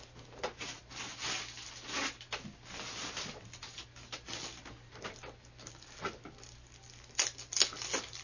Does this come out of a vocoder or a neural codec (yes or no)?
no